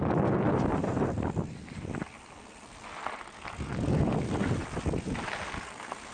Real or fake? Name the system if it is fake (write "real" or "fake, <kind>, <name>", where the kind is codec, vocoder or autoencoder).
real